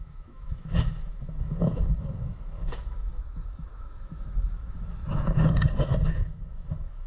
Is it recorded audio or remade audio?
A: remade